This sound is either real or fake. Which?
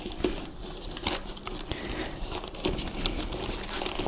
real